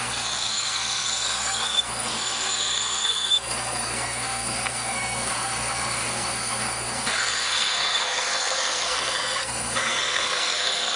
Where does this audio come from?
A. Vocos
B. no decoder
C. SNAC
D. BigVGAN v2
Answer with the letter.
C